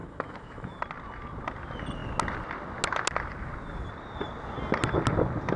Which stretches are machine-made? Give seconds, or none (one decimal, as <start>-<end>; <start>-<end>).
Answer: 0.0-0.8

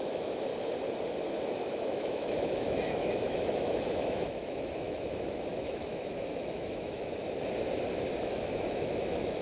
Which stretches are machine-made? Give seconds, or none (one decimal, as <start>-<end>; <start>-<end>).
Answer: 0.0-0.5; 1.3-7.2; 8.2-9.4

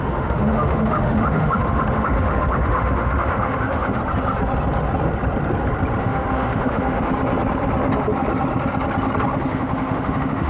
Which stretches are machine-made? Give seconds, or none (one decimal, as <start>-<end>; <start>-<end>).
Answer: 0.0-4.0; 6.0-7.1; 9.5-10.5

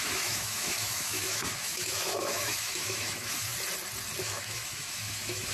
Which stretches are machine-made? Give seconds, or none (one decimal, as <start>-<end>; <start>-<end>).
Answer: 0.0-3.5; 4.2-5.5